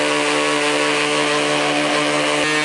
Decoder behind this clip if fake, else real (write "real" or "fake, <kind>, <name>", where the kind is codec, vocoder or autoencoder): real